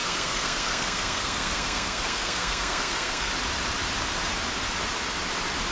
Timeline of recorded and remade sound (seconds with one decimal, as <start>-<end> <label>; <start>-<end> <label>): 0.0-3.3 remade; 3.3-5.7 recorded